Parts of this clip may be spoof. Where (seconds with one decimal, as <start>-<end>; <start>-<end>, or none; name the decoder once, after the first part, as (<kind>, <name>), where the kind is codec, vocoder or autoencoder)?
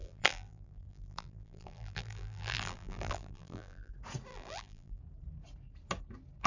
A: 0.0-3.9 (vocoder, BigVGAN v2); 4.3-5.0